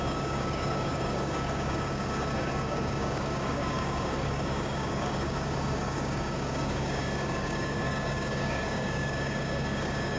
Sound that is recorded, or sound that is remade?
remade